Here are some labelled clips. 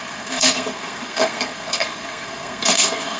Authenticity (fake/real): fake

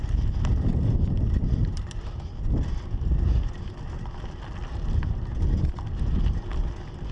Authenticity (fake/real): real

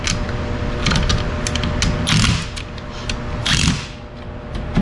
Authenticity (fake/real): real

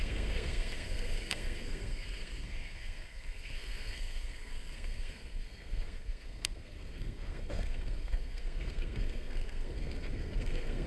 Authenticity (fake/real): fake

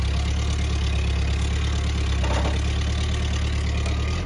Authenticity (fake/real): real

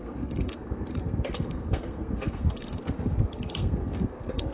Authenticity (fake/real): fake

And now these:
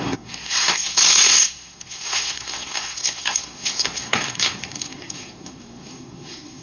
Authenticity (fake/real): fake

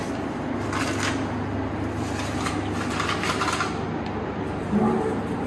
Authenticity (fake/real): real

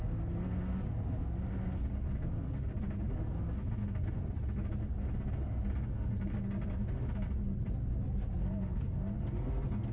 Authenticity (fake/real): real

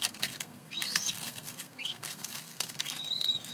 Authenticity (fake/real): fake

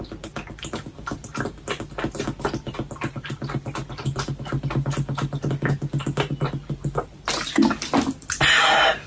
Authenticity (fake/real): real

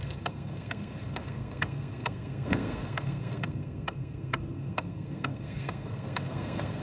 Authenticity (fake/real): fake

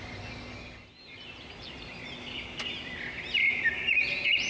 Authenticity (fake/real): real